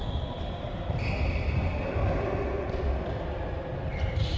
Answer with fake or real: real